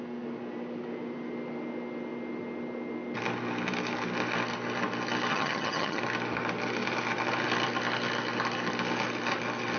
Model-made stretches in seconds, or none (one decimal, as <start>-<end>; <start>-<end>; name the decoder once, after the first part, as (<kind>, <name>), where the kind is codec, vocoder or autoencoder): 5.3-6.0 (vocoder, HiFi-GAN)